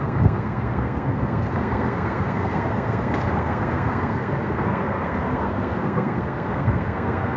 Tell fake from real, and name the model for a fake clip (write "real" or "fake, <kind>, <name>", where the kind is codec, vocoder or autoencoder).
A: fake, codec, SNAC